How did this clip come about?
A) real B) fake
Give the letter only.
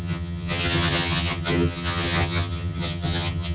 B